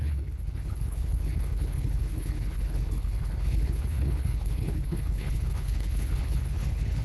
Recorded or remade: remade